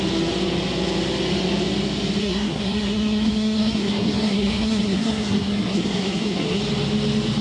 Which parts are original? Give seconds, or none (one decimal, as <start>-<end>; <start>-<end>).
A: 0.0-2.2; 6.6-7.4